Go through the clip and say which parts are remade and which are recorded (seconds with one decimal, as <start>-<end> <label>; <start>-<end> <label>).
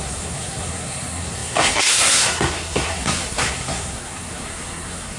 0.0-5.2 remade